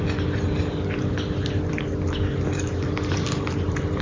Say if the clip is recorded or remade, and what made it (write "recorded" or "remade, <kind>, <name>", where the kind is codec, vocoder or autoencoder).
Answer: recorded